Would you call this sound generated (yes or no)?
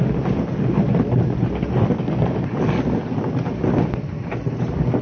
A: no